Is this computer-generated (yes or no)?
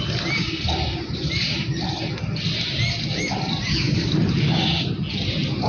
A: no